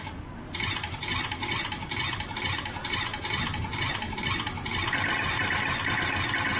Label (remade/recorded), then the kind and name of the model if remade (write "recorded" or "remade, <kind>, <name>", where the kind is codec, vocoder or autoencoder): recorded